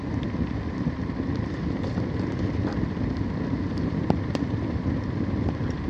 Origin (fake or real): real